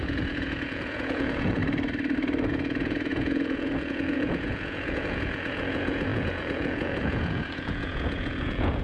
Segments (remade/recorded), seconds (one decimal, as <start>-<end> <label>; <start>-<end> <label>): 0.0-1.6 remade; 1.6-2.5 recorded; 2.5-8.8 remade